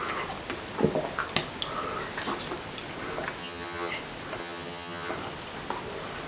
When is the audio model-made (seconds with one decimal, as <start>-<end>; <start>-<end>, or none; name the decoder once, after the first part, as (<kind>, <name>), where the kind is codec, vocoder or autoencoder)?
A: 3.4-3.9 (vocoder, HiFi-GAN); 4.4-5.1